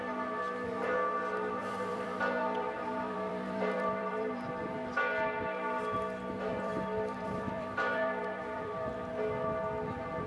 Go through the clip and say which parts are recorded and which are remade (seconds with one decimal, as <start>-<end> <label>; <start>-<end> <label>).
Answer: 0.0-1.6 recorded; 1.6-4.7 remade; 4.7-6.5 recorded; 6.5-9.1 remade; 9.1-10.3 recorded